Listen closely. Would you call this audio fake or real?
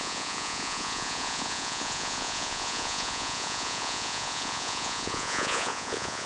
fake